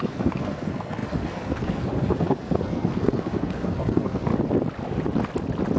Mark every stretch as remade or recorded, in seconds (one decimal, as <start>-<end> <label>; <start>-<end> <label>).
0.0-4.3 remade; 4.3-5.8 recorded